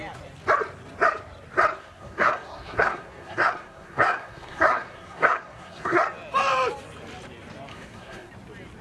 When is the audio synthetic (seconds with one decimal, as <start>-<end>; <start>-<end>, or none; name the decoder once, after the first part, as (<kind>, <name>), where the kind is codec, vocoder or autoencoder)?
1.8-6.0 (codec, SNAC); 7.7-8.3